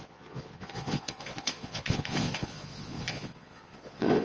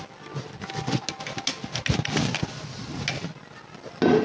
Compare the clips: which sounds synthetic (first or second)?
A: first